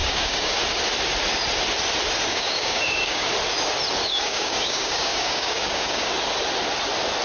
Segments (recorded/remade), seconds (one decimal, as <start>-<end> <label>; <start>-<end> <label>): 0.0-0.6 remade; 0.6-2.3 recorded; 2.3-3.3 remade; 3.3-4.0 recorded; 4.0-6.1 remade; 6.1-7.2 recorded

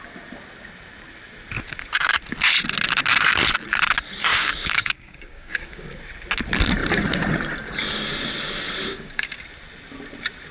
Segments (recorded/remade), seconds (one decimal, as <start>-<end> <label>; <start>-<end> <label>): 0.0-4.3 recorded; 4.3-6.0 remade; 6.0-8.9 recorded; 8.9-9.4 remade; 9.4-10.5 recorded

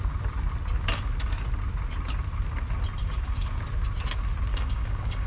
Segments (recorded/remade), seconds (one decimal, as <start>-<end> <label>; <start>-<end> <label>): 0.0-3.0 recorded; 3.0-3.6 remade; 3.6-4.5 recorded; 4.5-5.3 remade

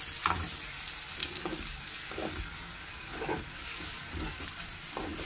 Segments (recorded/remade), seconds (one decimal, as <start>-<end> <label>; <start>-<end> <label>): 0.0-1.2 recorded; 1.2-4.4 remade; 4.4-5.3 recorded

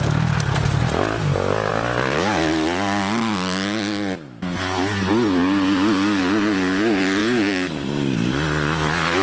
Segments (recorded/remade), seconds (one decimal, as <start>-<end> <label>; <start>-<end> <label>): 0.0-7.2 recorded; 7.2-7.7 remade; 7.7-9.2 recorded

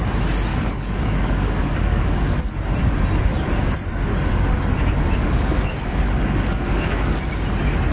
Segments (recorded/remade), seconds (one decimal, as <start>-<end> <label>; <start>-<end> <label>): 0.0-0.5 recorded; 0.5-2.4 remade; 2.4-5.2 recorded; 5.2-7.1 remade; 7.1-7.9 recorded

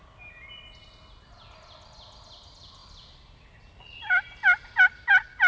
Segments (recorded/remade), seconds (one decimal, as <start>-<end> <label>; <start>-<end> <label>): 0.0-5.5 recorded